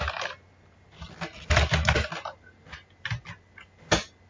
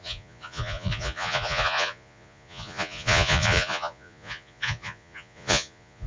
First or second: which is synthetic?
second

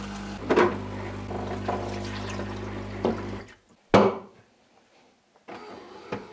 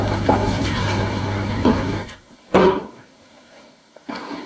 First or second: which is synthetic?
second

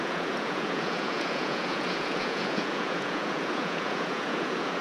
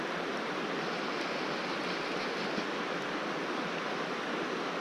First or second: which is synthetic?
first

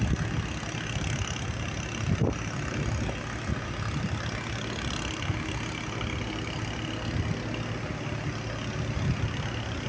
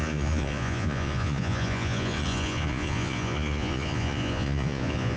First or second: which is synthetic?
second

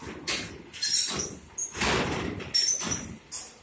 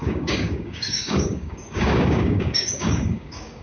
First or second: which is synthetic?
second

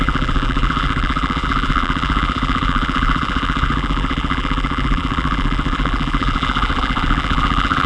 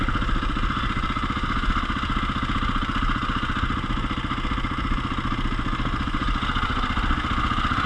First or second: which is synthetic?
first